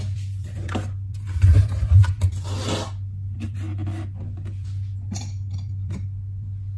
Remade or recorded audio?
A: recorded